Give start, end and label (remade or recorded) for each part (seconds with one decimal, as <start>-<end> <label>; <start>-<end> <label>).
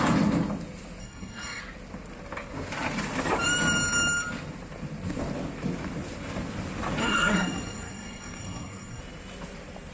0.0-1.0 recorded; 1.0-1.6 remade; 1.6-7.0 recorded; 7.0-9.0 remade; 9.0-9.9 recorded